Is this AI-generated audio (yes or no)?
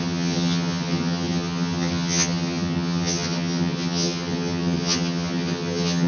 yes